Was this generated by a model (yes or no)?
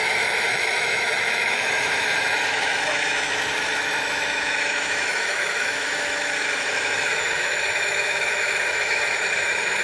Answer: yes